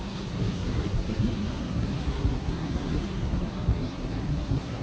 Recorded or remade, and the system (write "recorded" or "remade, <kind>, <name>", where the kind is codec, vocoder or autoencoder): remade, codec, SNAC